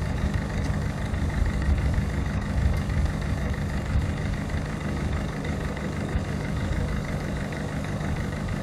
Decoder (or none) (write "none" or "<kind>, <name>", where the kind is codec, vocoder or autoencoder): codec, DAC